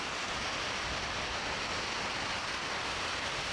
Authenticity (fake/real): real